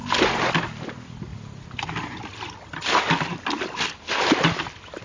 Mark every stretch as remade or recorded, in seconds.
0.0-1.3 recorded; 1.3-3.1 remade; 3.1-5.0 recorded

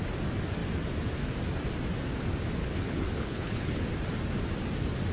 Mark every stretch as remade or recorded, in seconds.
0.0-2.7 recorded; 2.7-3.8 remade; 3.8-5.1 recorded